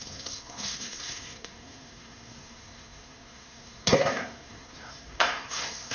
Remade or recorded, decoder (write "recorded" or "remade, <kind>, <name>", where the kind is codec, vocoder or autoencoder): remade, codec, SNAC